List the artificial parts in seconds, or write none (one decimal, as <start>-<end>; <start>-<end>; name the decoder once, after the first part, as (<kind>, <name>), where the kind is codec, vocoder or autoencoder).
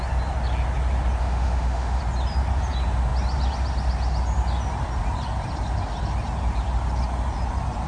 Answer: 1.2-2.0 (autoencoder, DAC-VAE)